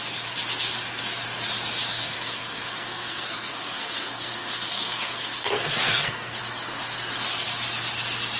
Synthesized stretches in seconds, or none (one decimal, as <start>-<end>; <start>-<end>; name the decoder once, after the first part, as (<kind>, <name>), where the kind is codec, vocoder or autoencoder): 1.9-6.4 (codec, SNAC)